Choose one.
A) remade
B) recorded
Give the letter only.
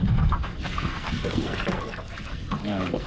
A